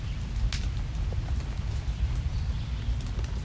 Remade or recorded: recorded